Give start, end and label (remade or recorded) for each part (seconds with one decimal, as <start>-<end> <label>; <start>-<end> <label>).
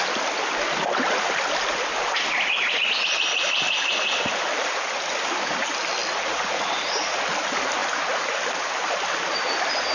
0.0-9.9 recorded